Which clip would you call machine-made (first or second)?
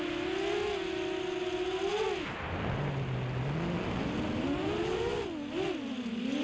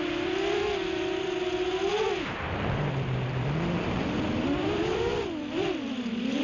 second